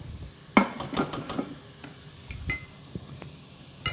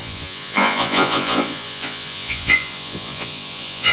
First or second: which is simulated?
second